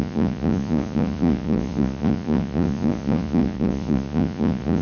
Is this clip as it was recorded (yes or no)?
no